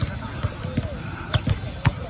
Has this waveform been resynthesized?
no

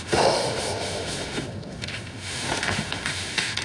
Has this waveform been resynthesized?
yes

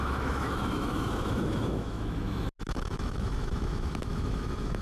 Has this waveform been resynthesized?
yes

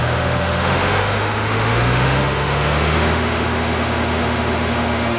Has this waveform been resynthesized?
yes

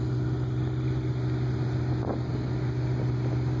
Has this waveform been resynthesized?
no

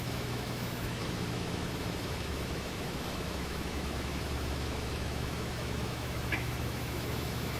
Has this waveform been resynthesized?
yes